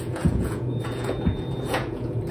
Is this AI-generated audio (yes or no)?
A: yes